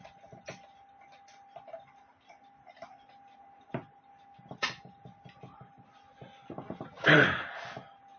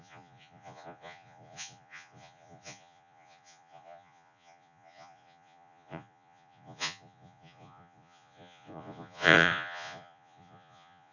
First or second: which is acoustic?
first